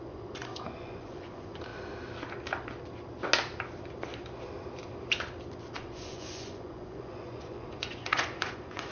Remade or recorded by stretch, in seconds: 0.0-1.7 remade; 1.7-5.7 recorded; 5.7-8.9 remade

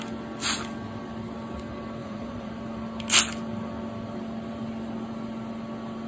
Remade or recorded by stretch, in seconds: 0.0-2.0 recorded; 2.0-2.5 remade; 2.5-6.1 recorded

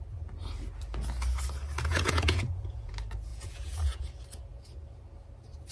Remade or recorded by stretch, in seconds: 0.0-1.9 recorded; 1.9-2.9 remade; 2.9-3.3 recorded; 3.3-4.0 remade; 4.0-5.7 recorded